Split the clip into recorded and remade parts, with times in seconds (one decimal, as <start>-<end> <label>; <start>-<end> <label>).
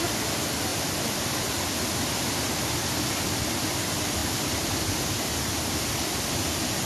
0.0-6.9 recorded